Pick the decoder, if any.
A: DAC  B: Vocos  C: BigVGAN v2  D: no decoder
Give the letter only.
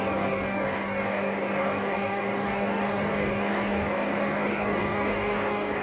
A